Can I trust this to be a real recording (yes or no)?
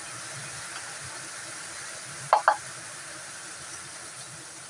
yes